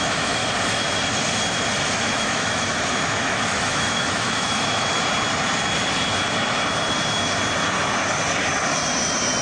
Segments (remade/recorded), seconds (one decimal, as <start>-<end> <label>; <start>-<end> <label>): 0.0-0.4 remade; 0.4-1.9 recorded; 1.9-5.0 remade; 5.0-9.4 recorded